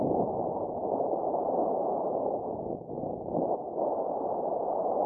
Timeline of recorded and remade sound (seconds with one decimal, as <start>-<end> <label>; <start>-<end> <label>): 0.0-5.1 remade